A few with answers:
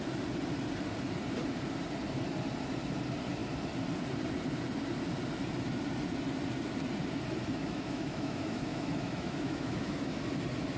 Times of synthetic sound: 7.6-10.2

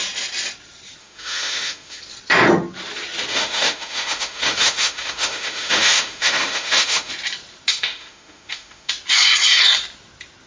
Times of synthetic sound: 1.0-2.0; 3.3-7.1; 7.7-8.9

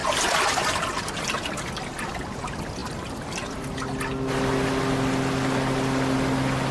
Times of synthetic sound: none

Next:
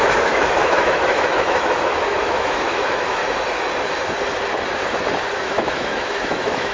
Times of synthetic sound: 0.0-3.2; 5.3-6.7

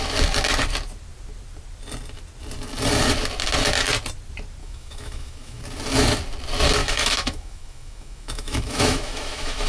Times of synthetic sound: 4.6-5.6; 6.8-9.7

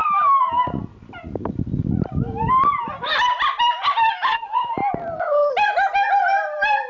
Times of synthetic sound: 4.1-4.8

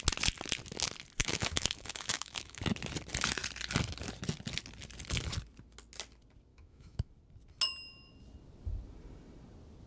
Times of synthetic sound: 1.2-2.6; 6.5-7.1